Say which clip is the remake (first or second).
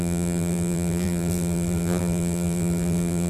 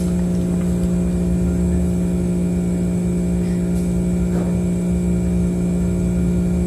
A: first